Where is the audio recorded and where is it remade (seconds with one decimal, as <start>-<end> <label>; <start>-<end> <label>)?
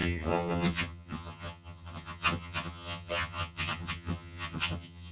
0.0-5.1 remade